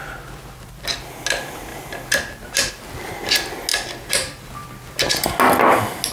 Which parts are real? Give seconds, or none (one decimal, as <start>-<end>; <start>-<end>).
0.0-6.1